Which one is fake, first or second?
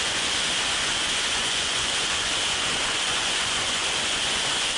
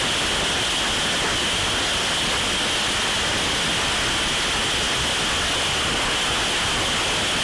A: first